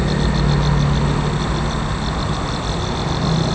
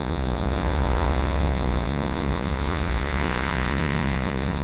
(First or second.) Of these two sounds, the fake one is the second